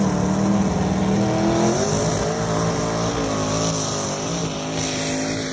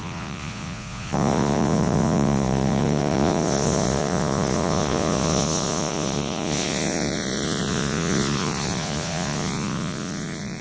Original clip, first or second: first